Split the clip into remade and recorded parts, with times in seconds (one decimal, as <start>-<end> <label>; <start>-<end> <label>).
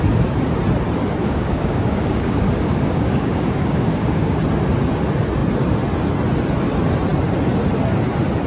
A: 0.0-1.2 recorded; 1.2-4.4 remade; 4.4-8.5 recorded